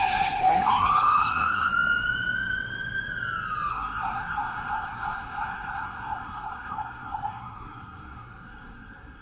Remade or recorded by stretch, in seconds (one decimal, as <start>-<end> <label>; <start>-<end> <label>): 0.0-1.7 remade; 1.7-3.7 recorded; 3.7-9.2 remade